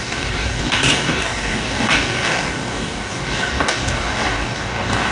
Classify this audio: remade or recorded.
remade